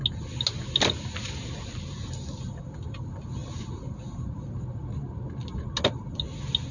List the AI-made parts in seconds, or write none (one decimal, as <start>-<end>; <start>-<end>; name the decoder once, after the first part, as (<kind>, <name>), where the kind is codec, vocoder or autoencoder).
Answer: none